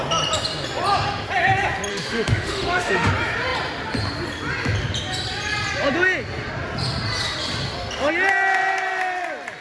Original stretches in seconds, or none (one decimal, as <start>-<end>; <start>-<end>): 0.0-1.9; 3.1-9.6